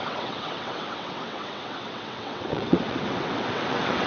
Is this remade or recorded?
remade